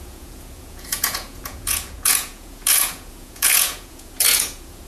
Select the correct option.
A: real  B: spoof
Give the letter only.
B